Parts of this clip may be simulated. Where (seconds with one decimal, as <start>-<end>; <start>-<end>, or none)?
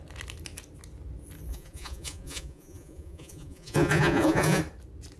1.5-4.6